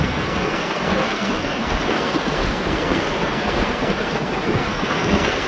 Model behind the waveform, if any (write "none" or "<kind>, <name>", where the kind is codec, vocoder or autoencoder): codec, SNAC